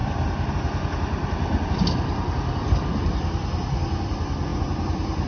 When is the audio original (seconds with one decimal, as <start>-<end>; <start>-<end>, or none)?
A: 0.0-5.3